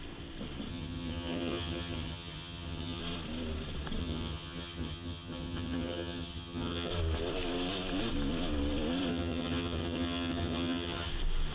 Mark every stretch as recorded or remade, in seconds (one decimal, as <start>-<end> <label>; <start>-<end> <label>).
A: 0.0-0.7 recorded; 0.7-3.0 remade; 3.0-4.0 recorded; 4.0-6.9 remade; 6.9-9.1 recorded; 9.1-11.1 remade; 11.1-11.5 recorded